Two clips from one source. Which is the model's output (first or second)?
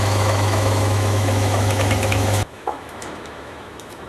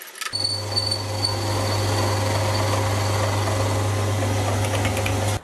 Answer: first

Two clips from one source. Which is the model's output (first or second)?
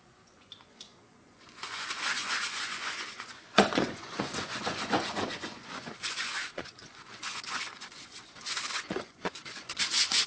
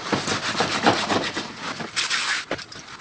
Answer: first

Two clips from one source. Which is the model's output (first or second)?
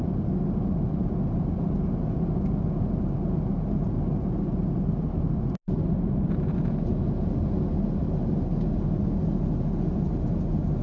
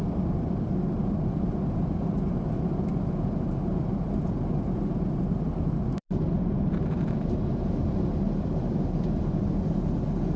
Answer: second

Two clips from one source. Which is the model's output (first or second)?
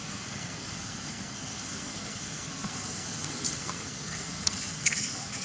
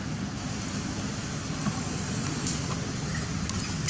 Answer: first